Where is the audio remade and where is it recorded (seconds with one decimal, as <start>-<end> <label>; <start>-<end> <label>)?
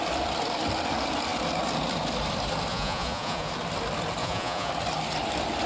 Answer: 0.0-2.7 recorded; 2.7-3.5 remade; 3.5-4.2 recorded; 4.2-4.7 remade; 4.7-5.7 recorded